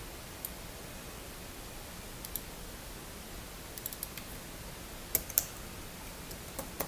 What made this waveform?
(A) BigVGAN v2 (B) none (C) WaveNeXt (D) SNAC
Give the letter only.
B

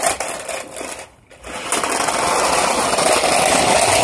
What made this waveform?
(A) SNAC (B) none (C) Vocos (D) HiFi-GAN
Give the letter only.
B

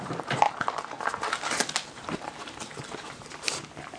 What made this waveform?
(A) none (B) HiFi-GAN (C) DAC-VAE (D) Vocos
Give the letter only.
A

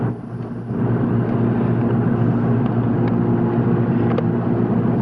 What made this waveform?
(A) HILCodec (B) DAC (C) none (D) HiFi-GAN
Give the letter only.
C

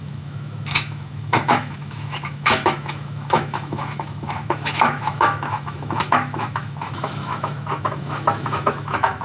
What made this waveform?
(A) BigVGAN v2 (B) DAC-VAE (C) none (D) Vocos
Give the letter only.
B